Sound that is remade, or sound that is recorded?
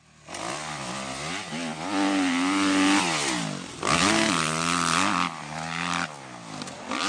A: recorded